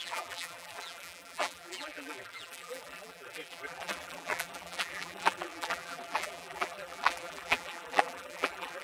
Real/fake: fake